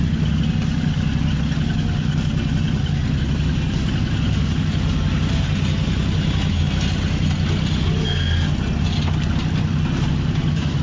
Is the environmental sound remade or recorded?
recorded